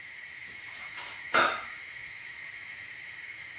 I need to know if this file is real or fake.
fake